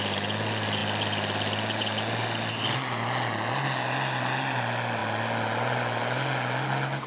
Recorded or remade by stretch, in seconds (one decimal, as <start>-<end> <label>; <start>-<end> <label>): 0.0-7.1 recorded